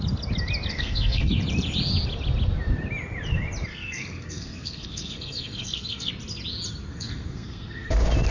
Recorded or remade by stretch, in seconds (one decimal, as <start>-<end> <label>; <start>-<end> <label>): 0.0-0.7 recorded; 0.7-1.3 remade; 1.3-3.7 recorded; 3.7-6.1 remade; 6.1-6.9 recorded; 6.9-7.9 remade; 7.9-8.3 recorded